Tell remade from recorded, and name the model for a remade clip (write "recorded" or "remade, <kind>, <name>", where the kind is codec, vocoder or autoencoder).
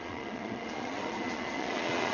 remade, vocoder, Vocos